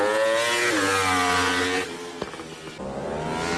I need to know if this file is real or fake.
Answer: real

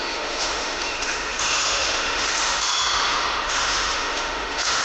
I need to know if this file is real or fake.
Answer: fake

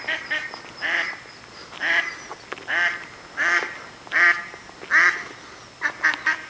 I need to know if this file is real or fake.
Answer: real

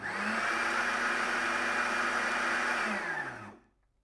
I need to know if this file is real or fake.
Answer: real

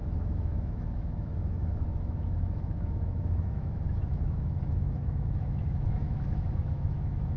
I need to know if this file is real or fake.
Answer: fake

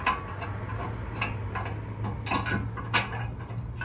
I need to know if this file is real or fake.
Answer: real